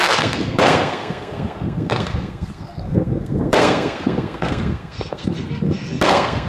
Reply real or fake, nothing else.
fake